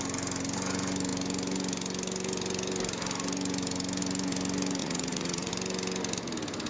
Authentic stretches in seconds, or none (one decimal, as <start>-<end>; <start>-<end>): 0.0-4.8; 5.5-6.7